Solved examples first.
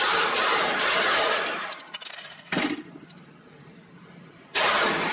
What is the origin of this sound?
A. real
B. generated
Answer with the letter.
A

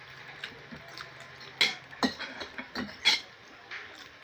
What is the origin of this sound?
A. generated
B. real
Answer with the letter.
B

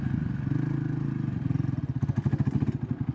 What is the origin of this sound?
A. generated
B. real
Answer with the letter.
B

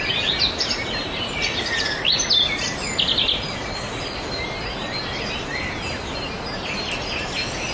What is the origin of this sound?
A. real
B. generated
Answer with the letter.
A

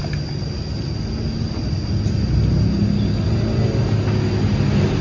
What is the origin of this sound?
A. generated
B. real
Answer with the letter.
B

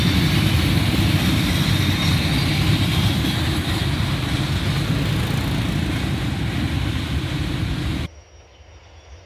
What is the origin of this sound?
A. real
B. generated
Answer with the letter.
A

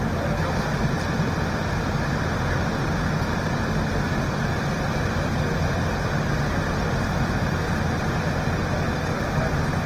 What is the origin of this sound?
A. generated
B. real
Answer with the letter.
B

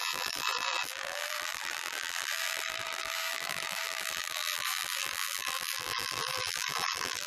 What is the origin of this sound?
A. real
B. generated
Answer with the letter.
B